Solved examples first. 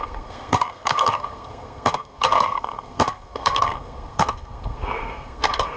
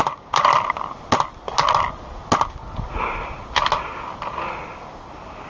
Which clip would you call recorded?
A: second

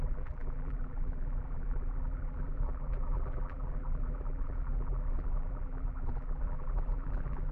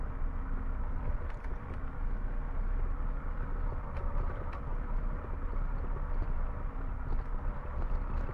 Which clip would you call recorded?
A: second